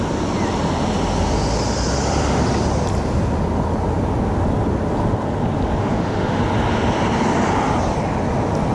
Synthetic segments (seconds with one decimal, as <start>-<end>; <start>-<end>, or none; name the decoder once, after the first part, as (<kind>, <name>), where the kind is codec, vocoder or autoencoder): 5.8-6.4 (autoencoder, DAC-VAE)